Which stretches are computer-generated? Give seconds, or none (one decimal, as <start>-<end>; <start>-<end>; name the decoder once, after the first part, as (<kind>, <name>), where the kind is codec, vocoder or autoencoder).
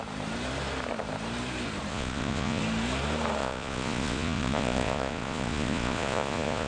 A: 1.9-2.6 (vocoder, Vocos); 3.4-6.7